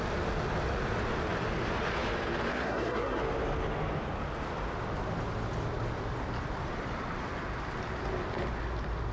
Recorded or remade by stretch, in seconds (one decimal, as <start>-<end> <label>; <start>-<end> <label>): 0.0-2.5 recorded; 2.5-3.2 remade; 3.2-9.1 recorded